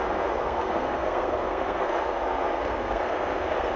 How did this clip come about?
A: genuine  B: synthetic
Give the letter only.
B